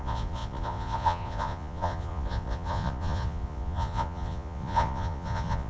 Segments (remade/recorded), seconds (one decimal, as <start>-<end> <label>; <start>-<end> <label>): 0.0-5.7 remade